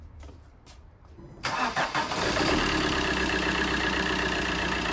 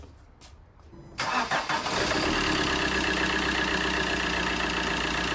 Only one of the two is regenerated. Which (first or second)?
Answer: first